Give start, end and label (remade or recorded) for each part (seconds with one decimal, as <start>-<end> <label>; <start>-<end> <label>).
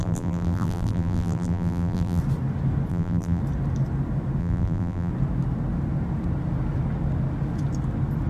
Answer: 0.0-2.2 remade; 2.2-2.9 recorded; 2.9-3.4 remade; 3.4-4.4 recorded; 4.4-5.1 remade; 5.1-8.3 recorded